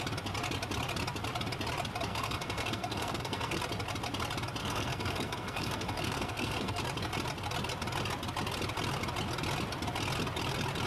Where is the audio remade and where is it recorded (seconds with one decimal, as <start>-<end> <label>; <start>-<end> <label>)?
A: 0.0-2.1 recorded; 2.1-3.6 remade; 3.6-4.6 recorded; 4.6-6.8 remade; 6.8-10.9 recorded